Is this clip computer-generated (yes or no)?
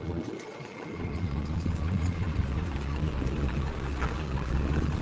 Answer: yes